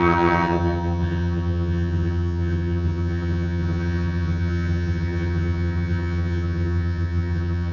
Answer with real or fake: fake